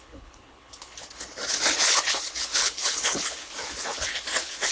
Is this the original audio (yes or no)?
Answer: no